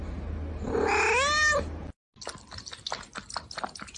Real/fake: real